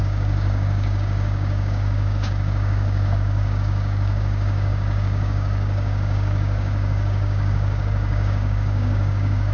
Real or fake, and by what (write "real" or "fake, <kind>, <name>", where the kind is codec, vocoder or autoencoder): fake, codec, DAC